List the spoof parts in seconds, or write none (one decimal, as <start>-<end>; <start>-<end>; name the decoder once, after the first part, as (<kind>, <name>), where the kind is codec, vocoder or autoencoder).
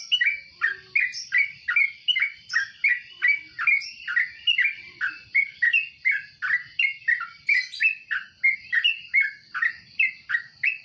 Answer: none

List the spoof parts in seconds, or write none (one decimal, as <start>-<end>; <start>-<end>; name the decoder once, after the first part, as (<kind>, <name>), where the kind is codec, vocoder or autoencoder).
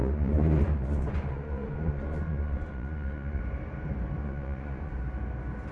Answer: 0.0-3.4 (vocoder, Vocos); 4.2-5.0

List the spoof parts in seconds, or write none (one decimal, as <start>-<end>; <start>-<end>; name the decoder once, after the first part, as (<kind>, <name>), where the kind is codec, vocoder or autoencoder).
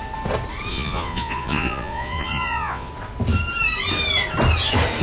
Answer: 0.7-2.9 (vocoder, Vocos)